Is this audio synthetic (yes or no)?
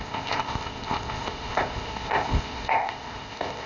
yes